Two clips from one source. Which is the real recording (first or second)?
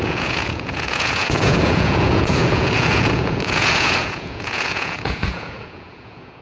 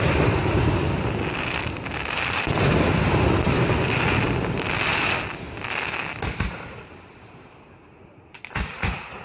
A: second